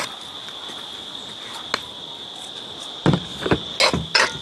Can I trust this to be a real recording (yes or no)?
yes